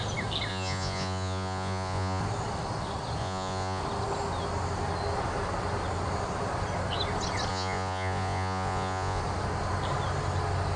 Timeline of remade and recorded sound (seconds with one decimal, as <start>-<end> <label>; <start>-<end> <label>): 0.0-0.5 recorded; 0.5-2.2 remade; 2.2-3.2 recorded; 3.2-3.8 remade; 3.8-7.5 recorded; 7.5-9.2 remade; 9.2-10.8 recorded

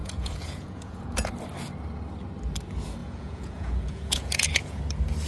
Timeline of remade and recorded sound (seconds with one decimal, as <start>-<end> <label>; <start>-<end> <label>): 0.0-1.3 remade; 1.3-3.0 recorded; 3.0-4.8 remade; 4.8-5.3 recorded

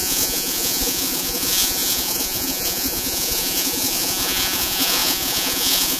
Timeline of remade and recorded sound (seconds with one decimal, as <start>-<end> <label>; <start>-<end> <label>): 0.0-6.0 remade